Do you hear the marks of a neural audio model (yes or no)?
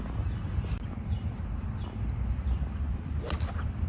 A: no